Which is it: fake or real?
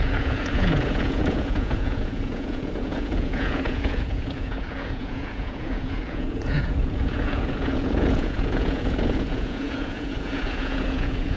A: fake